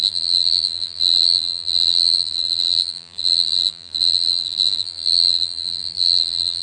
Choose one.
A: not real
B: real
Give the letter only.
A